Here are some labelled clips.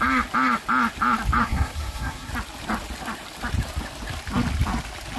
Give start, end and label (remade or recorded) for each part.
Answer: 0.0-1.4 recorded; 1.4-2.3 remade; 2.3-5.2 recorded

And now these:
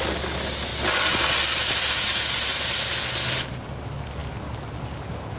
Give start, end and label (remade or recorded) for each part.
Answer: 0.0-5.4 recorded

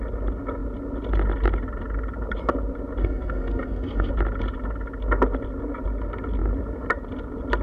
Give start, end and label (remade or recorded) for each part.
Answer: 0.0-3.0 recorded; 3.0-4.1 remade; 4.1-7.6 recorded

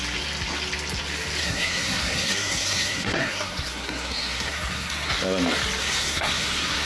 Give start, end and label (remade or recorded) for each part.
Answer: 0.0-1.4 recorded; 1.4-5.1 remade; 5.1-5.8 recorded; 5.8-6.9 remade

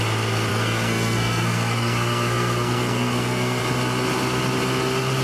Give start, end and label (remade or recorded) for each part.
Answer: 0.0-0.5 recorded; 0.5-3.6 remade; 3.6-5.2 recorded